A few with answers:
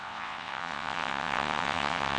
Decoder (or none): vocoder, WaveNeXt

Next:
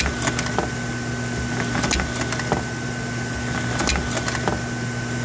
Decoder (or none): none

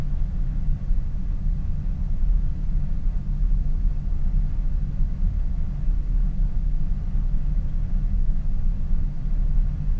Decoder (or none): none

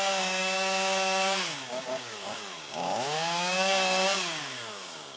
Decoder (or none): codec, DAC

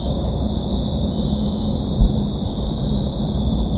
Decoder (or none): vocoder, BigVGAN v2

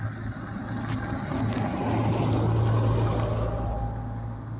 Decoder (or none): none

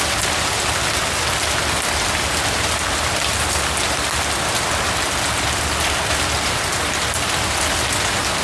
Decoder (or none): none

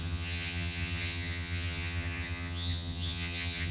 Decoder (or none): vocoder, HiFi-GAN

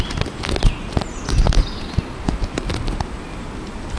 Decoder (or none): none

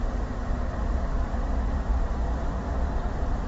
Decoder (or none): none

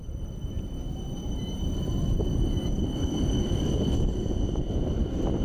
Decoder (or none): none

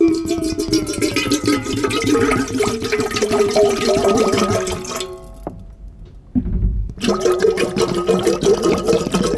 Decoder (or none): none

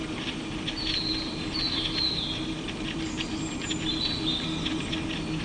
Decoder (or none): none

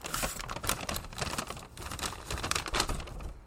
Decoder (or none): vocoder, BigVGAN v2